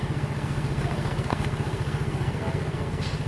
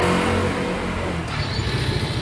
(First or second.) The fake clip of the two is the first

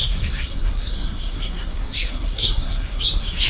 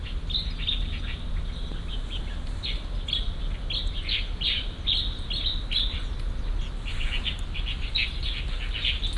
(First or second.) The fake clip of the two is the first